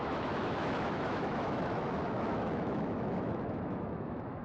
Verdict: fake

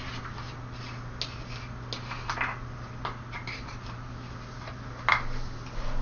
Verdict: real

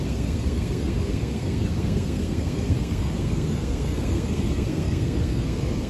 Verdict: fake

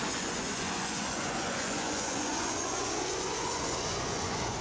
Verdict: fake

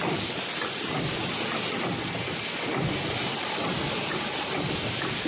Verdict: real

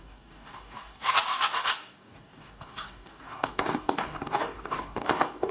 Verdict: fake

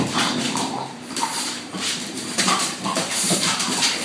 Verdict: fake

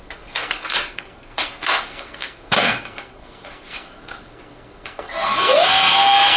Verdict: fake